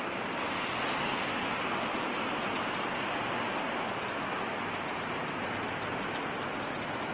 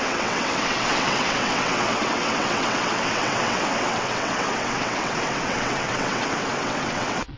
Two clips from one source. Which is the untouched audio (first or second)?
first